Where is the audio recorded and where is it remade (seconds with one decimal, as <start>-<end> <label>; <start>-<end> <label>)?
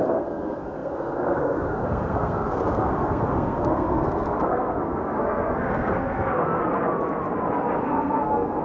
0.0-6.6 remade; 6.6-7.8 recorded; 7.8-8.6 remade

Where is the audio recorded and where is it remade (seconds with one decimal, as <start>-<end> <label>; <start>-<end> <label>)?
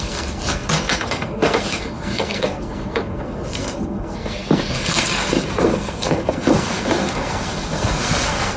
0.0-8.6 remade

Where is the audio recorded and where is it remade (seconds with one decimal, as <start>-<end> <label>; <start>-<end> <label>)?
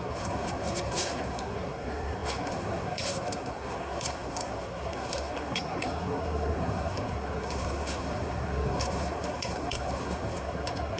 0.0-11.0 remade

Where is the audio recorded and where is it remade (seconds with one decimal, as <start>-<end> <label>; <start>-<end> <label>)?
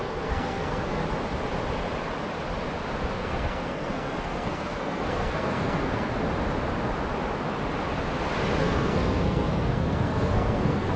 0.0-1.0 remade; 1.0-3.1 recorded; 3.1-6.1 remade; 6.1-8.6 recorded; 8.6-11.0 remade